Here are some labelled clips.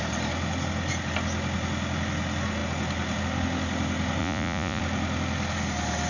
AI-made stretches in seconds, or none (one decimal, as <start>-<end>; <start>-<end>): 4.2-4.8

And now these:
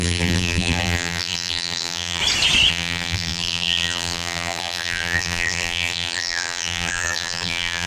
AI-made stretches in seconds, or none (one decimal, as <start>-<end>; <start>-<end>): 0.0-2.2; 2.7-7.9

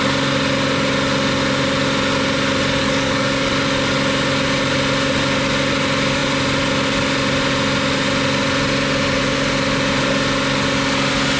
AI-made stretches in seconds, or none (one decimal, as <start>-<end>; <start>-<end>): 2.8-3.5

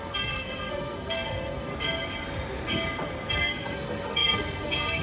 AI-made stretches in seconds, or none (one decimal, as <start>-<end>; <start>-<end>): 0.0-1.7; 3.3-5.0

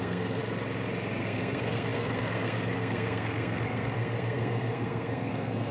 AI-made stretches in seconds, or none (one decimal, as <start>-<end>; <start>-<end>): 0.0-0.4; 1.2-5.7